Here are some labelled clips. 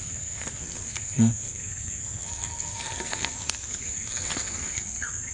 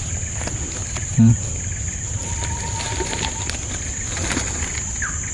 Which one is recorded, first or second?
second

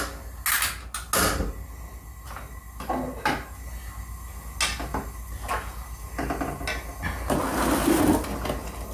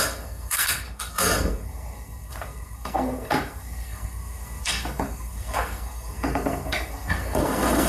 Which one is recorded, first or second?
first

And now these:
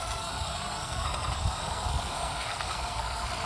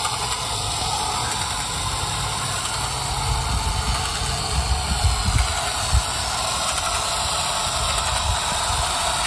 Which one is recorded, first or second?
second